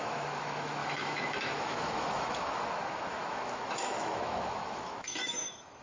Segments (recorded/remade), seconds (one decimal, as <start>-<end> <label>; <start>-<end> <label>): 0.0-5.8 remade